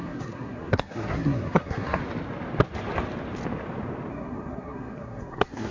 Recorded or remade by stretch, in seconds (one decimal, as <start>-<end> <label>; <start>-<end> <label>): 0.0-2.0 remade; 2.0-4.1 recorded; 4.1-5.7 remade